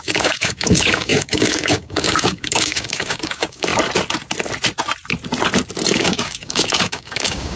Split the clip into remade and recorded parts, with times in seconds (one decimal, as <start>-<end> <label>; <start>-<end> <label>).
0.0-3.7 remade; 3.7-5.9 recorded; 5.9-7.6 remade